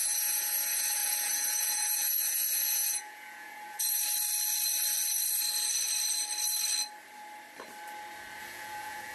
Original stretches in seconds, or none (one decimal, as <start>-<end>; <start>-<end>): 4.0-8.4